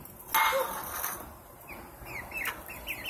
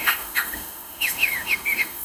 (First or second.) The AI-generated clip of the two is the second